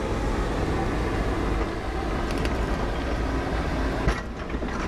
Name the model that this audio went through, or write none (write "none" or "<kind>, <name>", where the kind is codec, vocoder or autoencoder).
none